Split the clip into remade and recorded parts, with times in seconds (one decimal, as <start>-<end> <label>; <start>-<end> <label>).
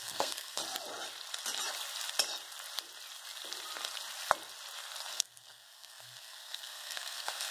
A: 0.0-0.6 remade; 0.6-5.1 recorded; 5.1-7.5 remade